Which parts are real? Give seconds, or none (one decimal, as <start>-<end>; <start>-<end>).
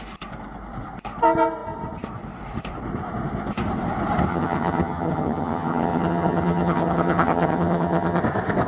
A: 0.0-4.3; 8.2-8.7